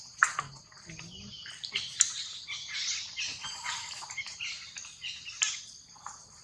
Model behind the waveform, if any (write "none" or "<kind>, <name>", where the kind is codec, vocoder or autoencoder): none